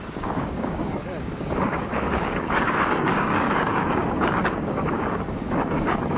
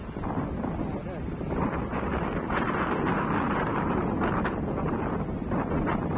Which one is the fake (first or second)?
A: first